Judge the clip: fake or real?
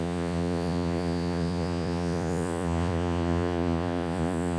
fake